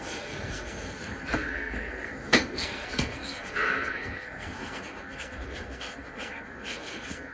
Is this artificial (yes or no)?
yes